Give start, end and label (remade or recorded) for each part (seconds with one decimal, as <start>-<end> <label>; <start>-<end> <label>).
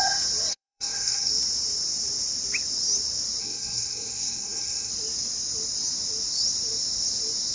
0.0-0.5 recorded; 0.5-1.3 remade; 1.3-3.4 recorded; 3.4-4.9 remade; 4.9-7.5 recorded